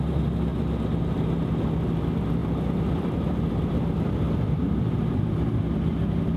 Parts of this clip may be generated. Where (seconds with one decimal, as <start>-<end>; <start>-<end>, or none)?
2.4-5.6

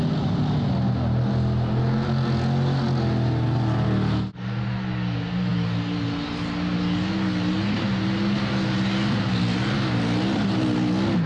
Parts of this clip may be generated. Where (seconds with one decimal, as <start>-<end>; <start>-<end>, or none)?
none